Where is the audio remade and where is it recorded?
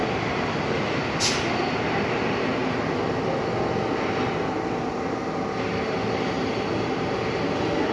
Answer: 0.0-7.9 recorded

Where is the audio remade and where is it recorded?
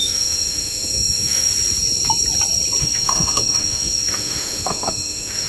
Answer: 0.0-1.5 remade; 1.5-2.8 recorded; 2.8-5.5 remade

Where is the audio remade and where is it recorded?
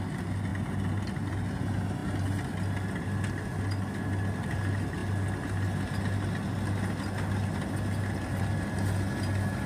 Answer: 0.0-9.7 recorded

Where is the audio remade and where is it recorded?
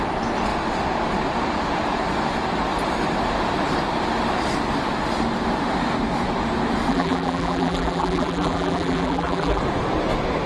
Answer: 0.0-6.9 recorded; 6.9-9.6 remade; 9.6-10.5 recorded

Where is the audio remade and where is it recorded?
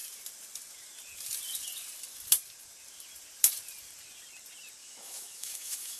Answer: 0.0-4.8 recorded; 4.8-6.0 remade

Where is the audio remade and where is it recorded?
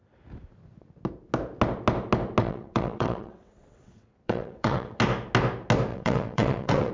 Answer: 0.0-2.4 recorded; 2.4-5.0 remade; 5.0-5.9 recorded; 5.9-6.9 remade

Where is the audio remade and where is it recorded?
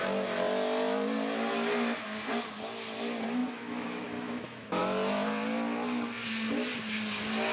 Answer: 0.0-3.4 recorded; 3.4-4.8 remade; 4.8-7.5 recorded